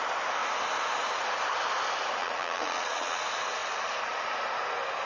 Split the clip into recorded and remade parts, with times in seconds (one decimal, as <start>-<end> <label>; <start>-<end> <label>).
0.0-2.2 recorded; 2.2-3.2 remade; 3.2-5.1 recorded

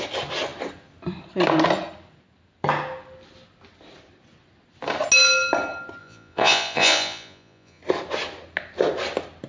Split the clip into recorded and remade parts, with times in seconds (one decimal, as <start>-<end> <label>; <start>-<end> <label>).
0.0-6.0 recorded; 6.0-7.8 remade; 7.8-9.5 recorded

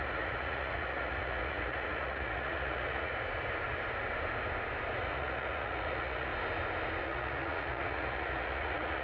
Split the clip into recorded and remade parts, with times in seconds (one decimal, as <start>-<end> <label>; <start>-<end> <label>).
0.0-3.1 remade; 3.1-5.0 recorded; 5.0-6.3 remade; 6.3-7.0 recorded; 7.0-9.0 remade